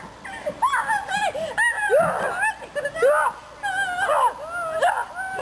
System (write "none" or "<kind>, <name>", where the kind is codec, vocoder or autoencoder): none